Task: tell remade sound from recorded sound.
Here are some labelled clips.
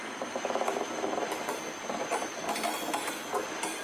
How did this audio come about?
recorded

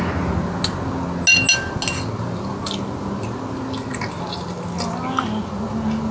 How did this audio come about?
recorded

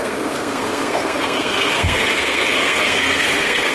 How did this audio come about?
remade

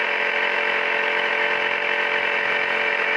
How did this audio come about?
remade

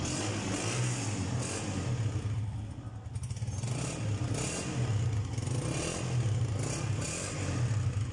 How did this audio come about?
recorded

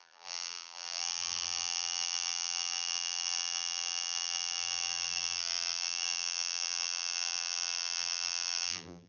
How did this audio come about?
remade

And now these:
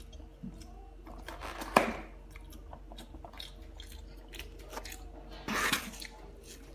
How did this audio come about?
recorded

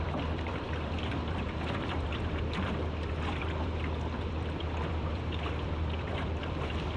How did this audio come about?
remade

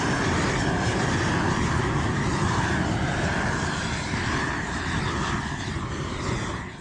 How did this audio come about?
recorded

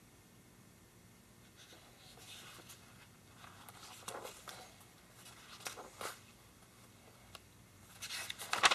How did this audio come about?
recorded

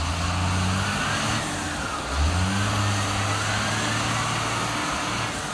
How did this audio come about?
recorded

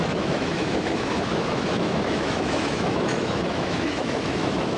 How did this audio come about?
remade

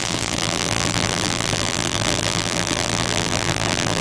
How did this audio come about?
remade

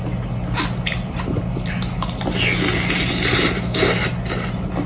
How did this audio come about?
recorded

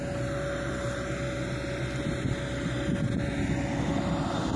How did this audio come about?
recorded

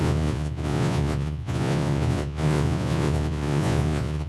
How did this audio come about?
remade